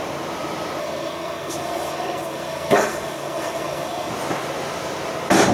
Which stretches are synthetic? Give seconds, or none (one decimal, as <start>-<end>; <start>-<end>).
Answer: 0.8-4.1